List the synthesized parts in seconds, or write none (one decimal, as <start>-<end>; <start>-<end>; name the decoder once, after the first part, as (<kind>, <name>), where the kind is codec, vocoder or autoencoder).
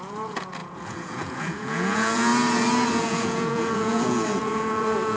0.0-2.3 (vocoder, Vocos); 2.9-5.2